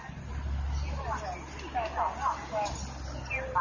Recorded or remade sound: recorded